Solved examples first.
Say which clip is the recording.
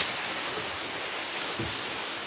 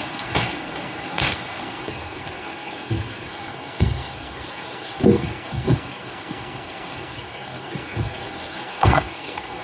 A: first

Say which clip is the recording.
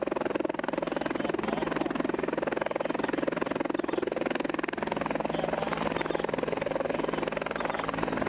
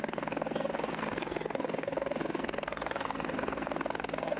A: first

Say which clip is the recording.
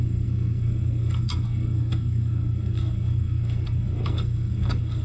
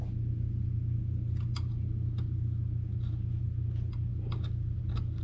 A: second